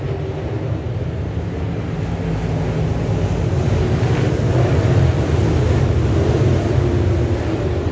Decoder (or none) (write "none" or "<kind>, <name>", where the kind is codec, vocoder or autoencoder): none